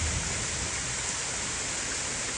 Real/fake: real